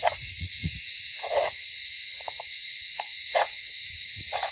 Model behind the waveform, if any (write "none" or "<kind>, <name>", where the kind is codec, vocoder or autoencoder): vocoder, Vocos